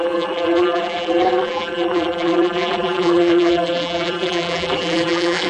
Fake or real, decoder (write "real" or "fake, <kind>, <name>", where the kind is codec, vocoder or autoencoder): fake, vocoder, BigVGAN v2